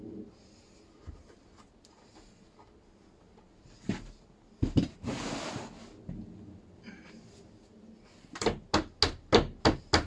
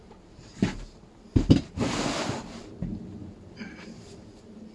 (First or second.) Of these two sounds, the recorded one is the first